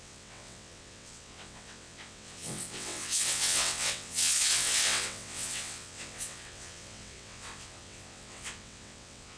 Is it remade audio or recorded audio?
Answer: remade